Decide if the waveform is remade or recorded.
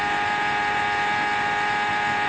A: recorded